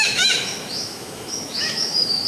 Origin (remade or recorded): remade